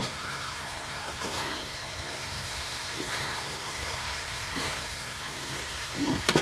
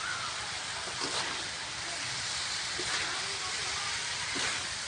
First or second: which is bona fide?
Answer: second